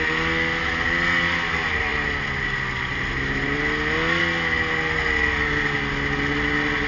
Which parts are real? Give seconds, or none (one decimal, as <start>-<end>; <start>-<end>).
0.0-6.9